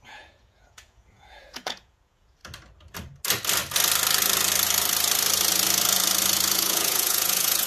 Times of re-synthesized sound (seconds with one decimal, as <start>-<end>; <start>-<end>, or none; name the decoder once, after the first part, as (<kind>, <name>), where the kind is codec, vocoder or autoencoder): 0.0-2.4 (vocoder, Vocos); 6.5-7.7